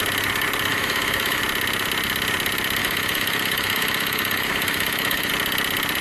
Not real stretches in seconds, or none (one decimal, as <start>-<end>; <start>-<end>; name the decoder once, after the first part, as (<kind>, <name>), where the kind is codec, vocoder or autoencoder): 0.7-1.4 (autoencoder, DAC-VAE); 2.8-5.3